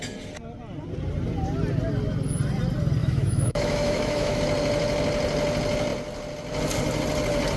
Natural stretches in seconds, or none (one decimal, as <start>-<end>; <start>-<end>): 0.0-3.0; 4.4-7.6